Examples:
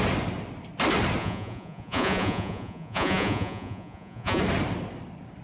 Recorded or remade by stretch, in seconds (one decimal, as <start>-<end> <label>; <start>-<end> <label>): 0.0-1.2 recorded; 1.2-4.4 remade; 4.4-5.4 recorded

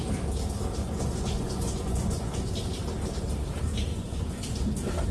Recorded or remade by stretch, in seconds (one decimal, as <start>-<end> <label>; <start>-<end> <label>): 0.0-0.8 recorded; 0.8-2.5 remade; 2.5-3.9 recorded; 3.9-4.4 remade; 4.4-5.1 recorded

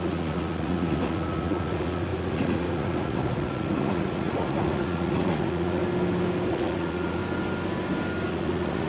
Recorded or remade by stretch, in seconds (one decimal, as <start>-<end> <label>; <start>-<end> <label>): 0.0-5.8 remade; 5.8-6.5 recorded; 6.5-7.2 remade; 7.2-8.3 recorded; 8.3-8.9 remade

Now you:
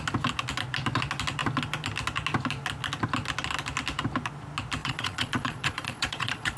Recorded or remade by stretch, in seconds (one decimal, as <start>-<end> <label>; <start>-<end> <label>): 0.0-4.8 recorded; 4.8-6.6 remade

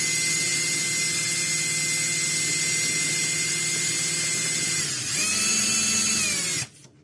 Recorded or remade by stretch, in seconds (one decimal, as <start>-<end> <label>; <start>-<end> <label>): 0.0-7.0 recorded

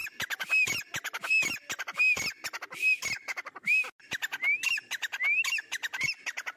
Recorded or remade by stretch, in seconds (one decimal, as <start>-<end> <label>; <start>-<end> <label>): 0.0-6.6 recorded

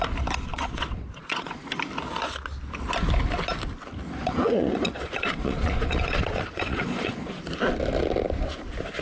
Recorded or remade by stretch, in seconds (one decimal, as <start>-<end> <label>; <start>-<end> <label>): 0.0-0.5 recorded; 0.5-1.7 remade; 1.7-4.2 recorded; 4.2-7.4 remade; 7.4-9.0 recorded